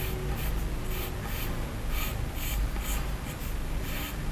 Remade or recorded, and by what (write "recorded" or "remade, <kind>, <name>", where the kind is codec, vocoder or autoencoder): recorded